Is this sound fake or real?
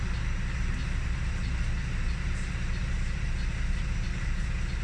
real